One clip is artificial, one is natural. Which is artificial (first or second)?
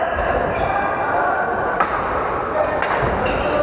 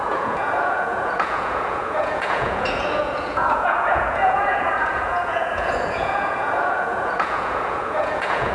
second